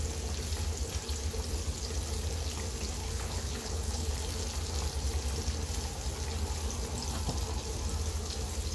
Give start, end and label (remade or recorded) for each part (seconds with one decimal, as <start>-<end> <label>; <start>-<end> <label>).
0.0-3.0 recorded; 3.0-4.1 remade; 4.1-8.7 recorded